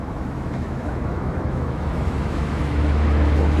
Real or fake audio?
fake